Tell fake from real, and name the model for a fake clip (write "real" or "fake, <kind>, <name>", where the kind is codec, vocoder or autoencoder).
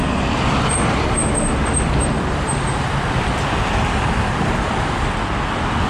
real